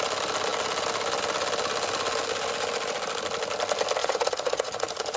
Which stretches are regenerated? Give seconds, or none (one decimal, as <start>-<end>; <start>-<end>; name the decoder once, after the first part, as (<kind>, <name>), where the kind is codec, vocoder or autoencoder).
4.0-5.2 (vocoder, Vocos)